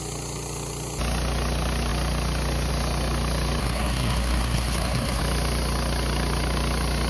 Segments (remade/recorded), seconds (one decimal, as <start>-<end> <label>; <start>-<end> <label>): 0.0-3.6 recorded; 3.6-5.2 remade; 5.2-7.1 recorded